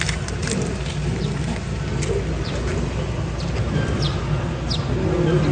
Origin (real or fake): real